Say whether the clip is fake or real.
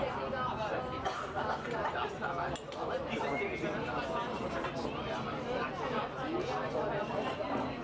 real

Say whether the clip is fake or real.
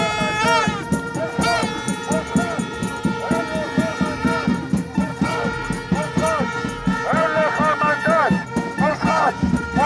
real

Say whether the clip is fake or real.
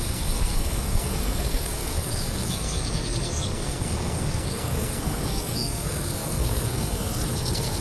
fake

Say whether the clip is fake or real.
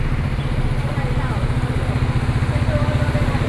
real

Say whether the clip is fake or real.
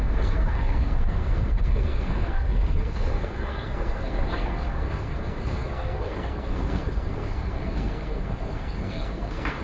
fake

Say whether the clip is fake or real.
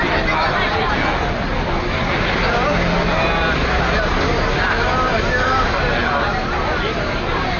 real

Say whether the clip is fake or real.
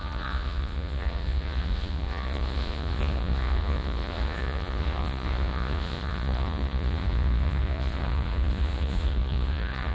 fake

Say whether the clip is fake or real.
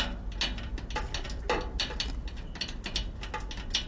real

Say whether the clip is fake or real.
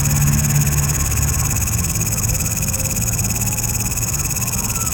fake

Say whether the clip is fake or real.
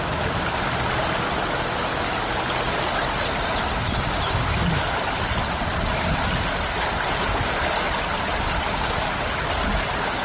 real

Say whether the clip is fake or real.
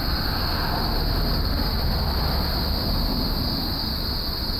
real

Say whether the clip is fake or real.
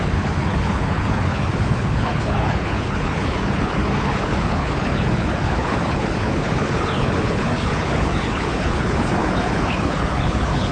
fake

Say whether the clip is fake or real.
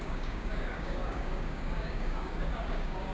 fake